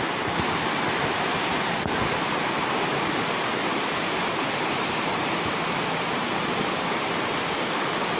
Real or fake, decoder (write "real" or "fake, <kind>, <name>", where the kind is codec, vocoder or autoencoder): real